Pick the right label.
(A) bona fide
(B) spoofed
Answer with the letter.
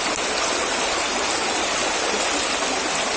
A